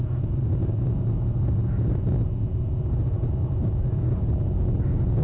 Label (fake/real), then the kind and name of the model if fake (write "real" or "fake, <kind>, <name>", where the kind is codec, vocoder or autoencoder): real